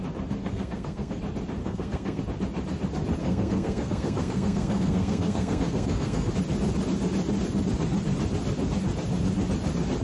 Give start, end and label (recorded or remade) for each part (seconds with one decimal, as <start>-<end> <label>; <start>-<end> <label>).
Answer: 0.0-0.4 recorded; 0.4-1.2 remade; 1.2-1.6 recorded; 1.6-2.2 remade; 2.2-3.2 recorded; 3.2-6.3 remade; 6.3-10.0 recorded